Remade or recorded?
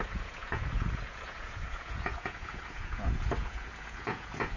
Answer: remade